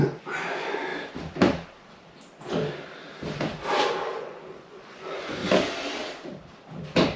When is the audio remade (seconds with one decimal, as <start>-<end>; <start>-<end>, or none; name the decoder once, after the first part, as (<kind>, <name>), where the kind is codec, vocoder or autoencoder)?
0.0-0.9 (vocoder, Vocos); 3.8-5.4